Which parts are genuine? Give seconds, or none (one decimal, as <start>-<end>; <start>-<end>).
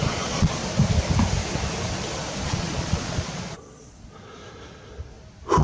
0.6-2.4; 4.4-5.6